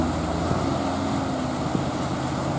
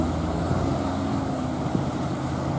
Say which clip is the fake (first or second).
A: second